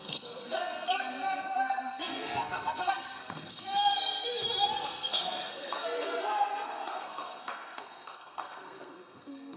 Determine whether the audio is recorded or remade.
remade